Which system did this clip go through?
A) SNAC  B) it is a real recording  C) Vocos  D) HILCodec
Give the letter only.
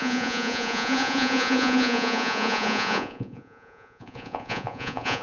C